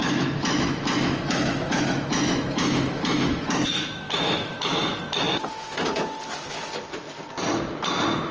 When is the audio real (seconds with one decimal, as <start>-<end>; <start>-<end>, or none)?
5.0-5.5; 6.0-8.3